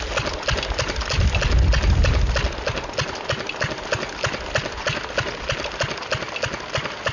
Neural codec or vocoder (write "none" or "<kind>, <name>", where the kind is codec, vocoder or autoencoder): none